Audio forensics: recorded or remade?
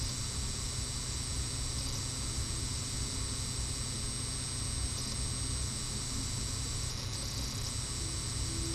recorded